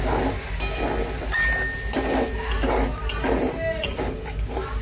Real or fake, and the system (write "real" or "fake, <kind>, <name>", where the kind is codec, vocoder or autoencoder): real